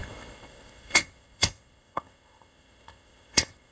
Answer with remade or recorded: remade